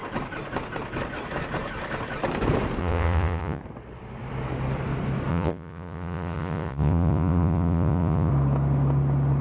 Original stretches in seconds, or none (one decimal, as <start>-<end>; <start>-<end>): 0.0-2.8; 3.6-5.3; 8.3-9.4